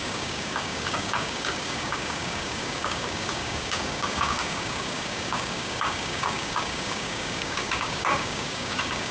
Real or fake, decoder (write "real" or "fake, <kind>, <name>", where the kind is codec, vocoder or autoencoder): fake, codec, DAC